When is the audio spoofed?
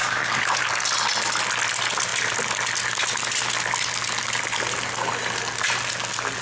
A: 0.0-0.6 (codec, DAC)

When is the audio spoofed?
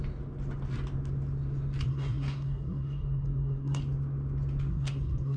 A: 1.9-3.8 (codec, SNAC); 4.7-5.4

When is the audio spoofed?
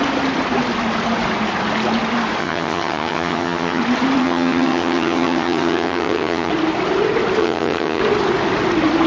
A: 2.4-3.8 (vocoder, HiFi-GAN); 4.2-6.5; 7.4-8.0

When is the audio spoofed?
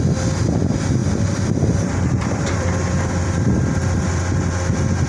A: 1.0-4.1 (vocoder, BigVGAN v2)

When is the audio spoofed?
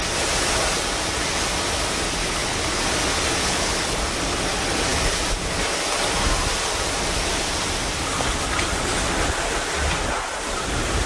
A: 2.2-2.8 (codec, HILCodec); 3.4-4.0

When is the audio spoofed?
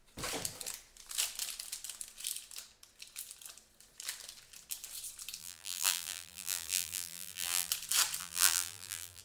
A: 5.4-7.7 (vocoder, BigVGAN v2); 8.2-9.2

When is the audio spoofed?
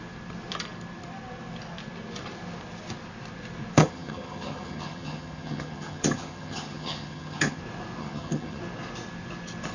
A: 3.8-7.6 (vocoder, HiFi-GAN); 8.0-8.6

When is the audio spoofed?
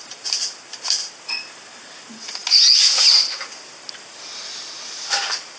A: none